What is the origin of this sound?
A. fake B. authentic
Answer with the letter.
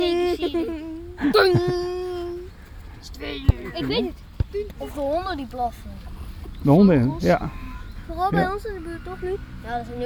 B